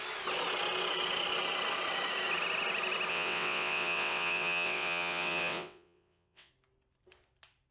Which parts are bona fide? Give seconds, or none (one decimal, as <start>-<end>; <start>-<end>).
0.0-3.1; 6.5-7.7